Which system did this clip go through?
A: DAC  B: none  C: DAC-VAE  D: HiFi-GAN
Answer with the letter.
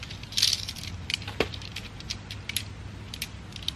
B